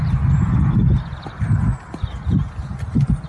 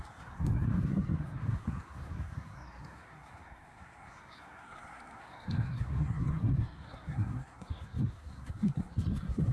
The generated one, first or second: second